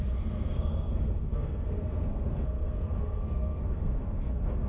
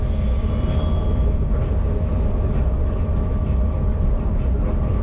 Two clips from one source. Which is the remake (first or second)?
first